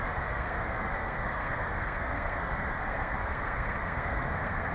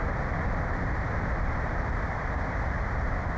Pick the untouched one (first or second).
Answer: second